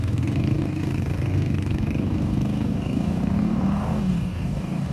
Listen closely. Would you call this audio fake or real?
fake